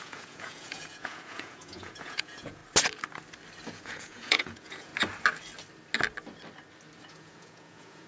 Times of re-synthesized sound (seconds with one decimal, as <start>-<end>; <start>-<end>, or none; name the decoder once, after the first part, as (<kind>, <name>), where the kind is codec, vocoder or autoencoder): 0.0-2.6 (vocoder, Vocos); 3.7-4.9; 7.1-8.1